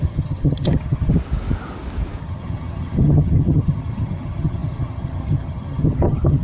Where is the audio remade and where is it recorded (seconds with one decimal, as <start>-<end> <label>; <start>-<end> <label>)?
0.0-1.1 remade; 1.1-2.2 recorded; 2.2-6.4 remade